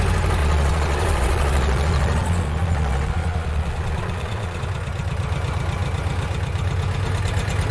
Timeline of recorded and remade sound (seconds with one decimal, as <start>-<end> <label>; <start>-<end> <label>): 0.0-0.4 recorded; 0.4-4.6 remade; 4.6-7.7 recorded